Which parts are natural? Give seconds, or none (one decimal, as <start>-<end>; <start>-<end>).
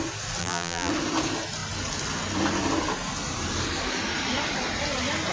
0.0-0.4; 0.9-5.3